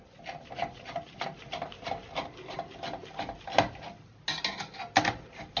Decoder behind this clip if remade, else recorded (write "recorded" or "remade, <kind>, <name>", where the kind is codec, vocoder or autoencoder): recorded